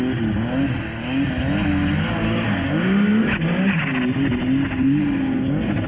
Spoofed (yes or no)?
no